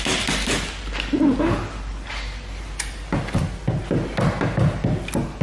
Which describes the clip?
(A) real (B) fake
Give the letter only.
A